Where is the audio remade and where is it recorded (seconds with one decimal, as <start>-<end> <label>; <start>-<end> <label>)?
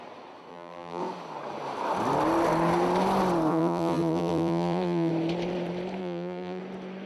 0.0-0.5 recorded; 0.5-1.0 remade; 1.0-3.5 recorded; 3.5-5.1 remade; 5.1-6.0 recorded; 6.0-6.6 remade; 6.6-7.1 recorded